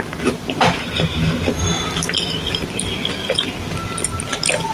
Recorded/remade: remade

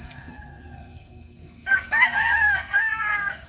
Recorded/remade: remade